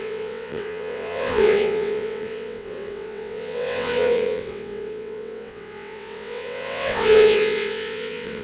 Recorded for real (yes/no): no